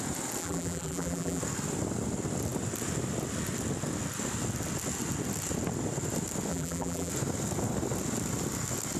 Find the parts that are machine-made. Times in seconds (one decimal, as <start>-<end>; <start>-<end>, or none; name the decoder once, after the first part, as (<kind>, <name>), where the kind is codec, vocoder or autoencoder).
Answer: 0.4-1.4 (vocoder, BigVGAN v2); 6.5-7.1